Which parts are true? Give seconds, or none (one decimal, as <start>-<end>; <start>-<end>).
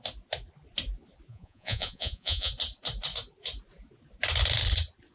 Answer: 0.0-1.3; 2.5-5.1